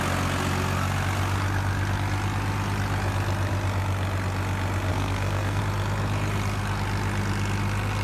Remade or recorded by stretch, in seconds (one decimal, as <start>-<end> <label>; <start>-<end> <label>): 0.0-4.9 recorded; 4.9-5.6 remade; 5.6-8.0 recorded